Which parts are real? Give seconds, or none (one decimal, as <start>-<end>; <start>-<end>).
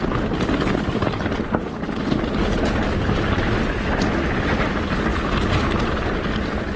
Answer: 0.0-6.8